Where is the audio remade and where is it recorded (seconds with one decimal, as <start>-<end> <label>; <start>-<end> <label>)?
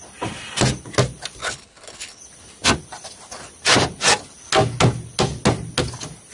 0.0-1.4 recorded; 1.4-2.2 remade; 2.2-6.3 recorded